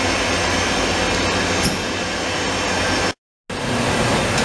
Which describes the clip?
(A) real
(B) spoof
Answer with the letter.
A